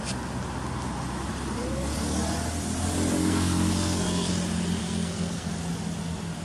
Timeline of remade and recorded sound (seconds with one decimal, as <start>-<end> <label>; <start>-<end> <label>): 0.0-3.2 recorded; 3.2-4.3 remade; 4.3-4.8 recorded; 4.8-5.5 remade; 5.5-6.4 recorded